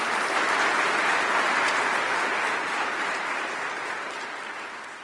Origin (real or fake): real